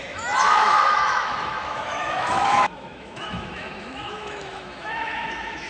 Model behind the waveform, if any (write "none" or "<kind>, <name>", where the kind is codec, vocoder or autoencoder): autoencoder, DAC-VAE